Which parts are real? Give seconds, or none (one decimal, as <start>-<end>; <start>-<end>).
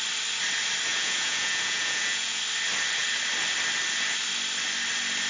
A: 0.0-0.9; 2.4-5.3